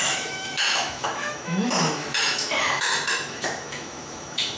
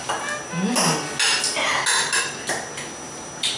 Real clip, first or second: second